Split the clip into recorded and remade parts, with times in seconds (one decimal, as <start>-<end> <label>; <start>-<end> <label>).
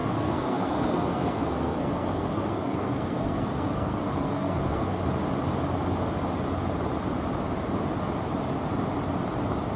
0.0-5.0 remade; 5.0-9.8 recorded